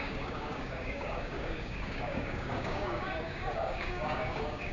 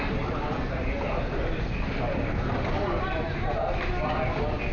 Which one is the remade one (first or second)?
first